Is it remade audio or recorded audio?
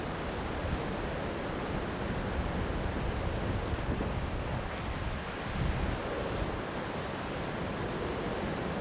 recorded